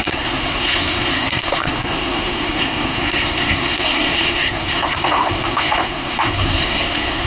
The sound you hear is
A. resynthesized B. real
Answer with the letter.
A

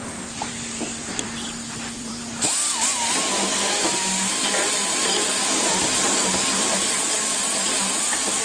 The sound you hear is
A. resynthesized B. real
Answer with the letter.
A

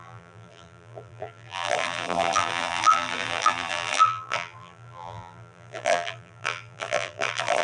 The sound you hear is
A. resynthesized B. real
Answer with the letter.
A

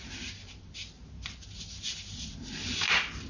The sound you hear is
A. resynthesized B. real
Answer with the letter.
B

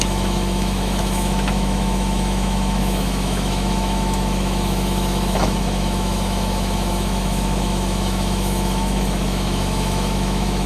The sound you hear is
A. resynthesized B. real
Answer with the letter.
A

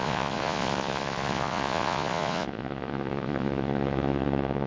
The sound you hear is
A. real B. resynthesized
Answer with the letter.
B